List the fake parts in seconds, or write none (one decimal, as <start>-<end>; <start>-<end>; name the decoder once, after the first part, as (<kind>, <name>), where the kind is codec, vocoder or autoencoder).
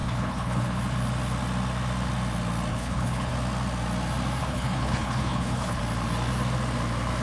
0.0-0.8 (codec, HILCodec); 2.7-3.3; 4.4-5.8